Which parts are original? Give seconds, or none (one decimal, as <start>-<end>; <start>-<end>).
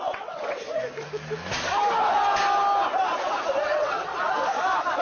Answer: 0.6-3.6; 4.1-5.0